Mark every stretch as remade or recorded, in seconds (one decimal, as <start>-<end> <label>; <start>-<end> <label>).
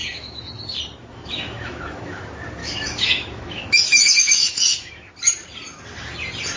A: 0.0-0.5 remade; 0.5-1.0 recorded; 1.0-2.2 remade; 2.2-2.6 recorded; 2.6-5.1 remade; 5.1-6.6 recorded